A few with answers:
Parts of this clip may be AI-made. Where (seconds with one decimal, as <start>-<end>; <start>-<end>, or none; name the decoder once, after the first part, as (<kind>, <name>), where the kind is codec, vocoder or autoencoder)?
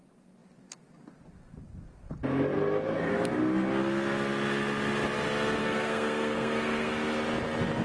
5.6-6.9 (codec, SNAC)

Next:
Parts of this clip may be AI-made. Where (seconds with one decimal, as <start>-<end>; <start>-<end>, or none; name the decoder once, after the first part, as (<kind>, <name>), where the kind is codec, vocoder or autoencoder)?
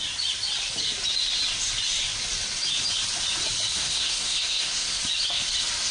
3.8-5.0 (codec, SNAC)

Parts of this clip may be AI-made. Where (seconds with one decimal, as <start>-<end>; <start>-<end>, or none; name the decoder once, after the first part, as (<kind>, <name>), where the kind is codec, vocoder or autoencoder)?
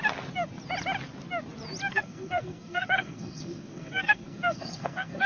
1.9-5.3 (codec, SNAC)